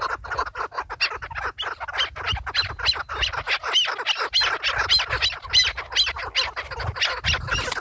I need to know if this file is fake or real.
real